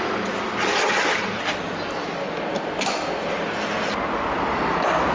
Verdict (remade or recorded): recorded